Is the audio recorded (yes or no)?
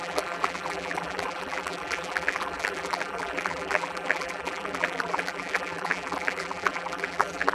no